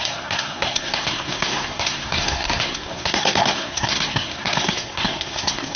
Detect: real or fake fake